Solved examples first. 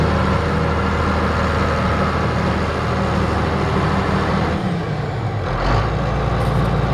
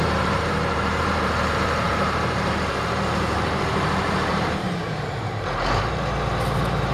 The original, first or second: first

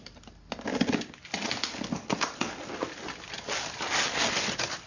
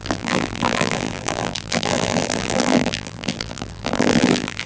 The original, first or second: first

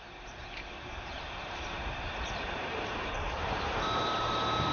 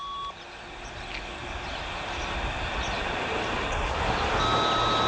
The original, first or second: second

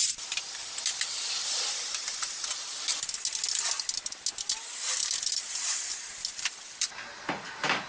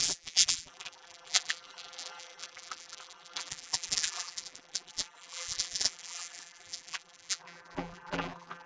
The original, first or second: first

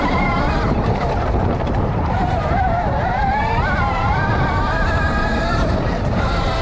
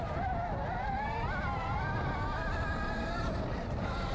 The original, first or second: second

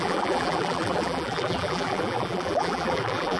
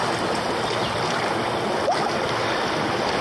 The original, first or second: second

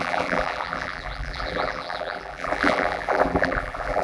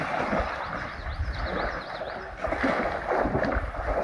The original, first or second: second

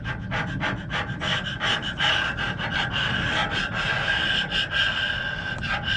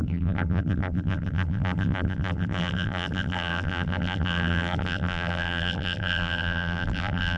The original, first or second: first